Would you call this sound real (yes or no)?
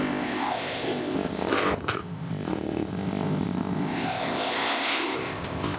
no